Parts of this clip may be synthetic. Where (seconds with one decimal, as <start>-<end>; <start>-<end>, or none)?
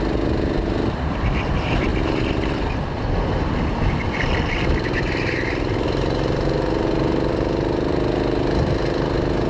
none